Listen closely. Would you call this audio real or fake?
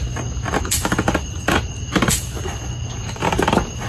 real